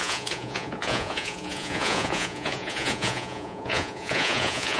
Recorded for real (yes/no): no